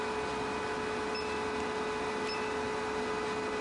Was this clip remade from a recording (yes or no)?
no